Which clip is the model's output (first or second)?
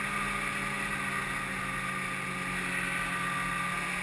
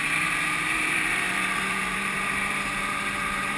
second